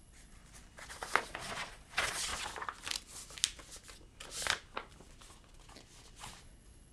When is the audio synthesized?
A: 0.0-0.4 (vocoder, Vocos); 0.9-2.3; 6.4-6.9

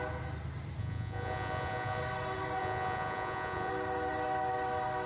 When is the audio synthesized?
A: 0.8-2.0 (vocoder, Vocos); 2.6-3.7